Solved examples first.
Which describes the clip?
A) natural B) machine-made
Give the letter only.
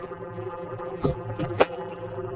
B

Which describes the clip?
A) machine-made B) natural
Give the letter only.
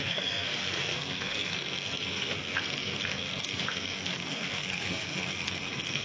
A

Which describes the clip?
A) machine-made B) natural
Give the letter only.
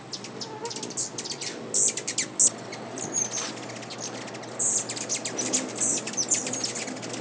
B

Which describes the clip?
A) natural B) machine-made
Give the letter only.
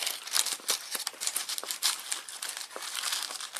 A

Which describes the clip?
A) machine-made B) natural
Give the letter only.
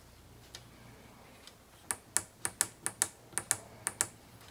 B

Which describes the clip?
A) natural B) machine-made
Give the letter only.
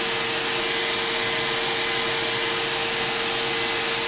A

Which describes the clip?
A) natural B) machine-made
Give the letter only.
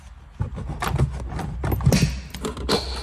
A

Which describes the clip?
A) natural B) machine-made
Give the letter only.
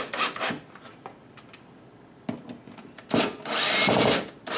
A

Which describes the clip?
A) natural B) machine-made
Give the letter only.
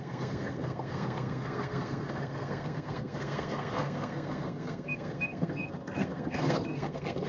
B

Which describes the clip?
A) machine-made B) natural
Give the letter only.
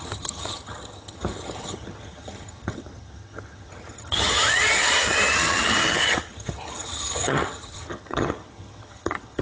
A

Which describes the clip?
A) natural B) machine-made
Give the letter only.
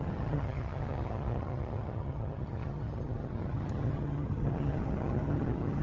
B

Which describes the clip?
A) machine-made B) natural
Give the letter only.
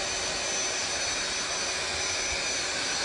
B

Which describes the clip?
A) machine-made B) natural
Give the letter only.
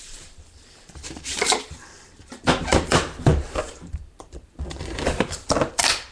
A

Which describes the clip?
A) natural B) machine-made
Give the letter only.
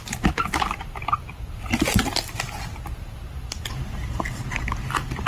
A